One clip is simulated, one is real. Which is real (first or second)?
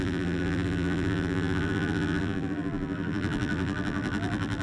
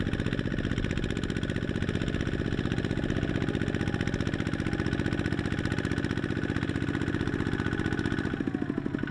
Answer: second